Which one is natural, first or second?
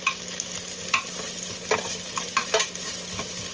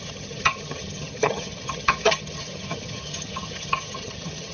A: first